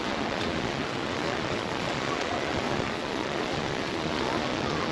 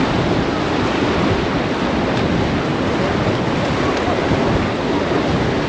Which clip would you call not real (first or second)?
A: first